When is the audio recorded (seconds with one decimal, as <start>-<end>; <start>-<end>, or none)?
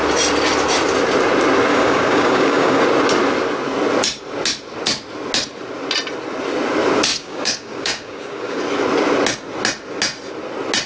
0.0-1.7; 2.8-7.1; 8.6-10.9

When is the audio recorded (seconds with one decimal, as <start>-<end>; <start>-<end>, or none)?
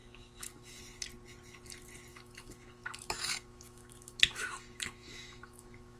0.8-2.1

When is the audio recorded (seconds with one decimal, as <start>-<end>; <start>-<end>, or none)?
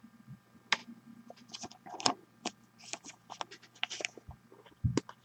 0.0-0.8; 3.4-5.2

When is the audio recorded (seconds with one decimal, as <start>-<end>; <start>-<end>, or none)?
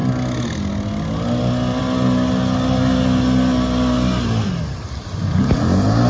0.0-6.1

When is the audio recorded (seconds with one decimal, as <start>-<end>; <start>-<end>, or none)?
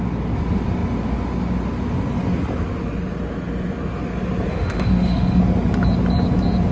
0.0-4.5; 5.4-6.7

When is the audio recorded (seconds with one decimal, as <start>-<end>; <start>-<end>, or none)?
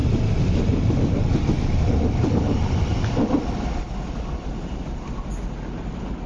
0.0-6.3